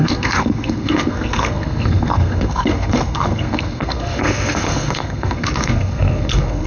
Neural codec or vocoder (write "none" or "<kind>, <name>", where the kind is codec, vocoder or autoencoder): codec, SNAC